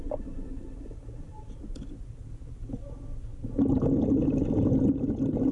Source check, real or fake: real